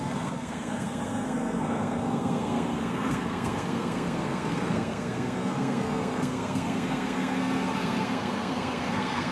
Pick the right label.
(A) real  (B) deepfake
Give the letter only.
B